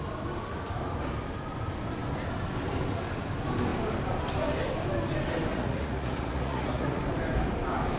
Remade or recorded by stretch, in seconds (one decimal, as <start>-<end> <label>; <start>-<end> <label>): 0.0-5.5 recorded; 5.5-7.0 remade; 7.0-8.0 recorded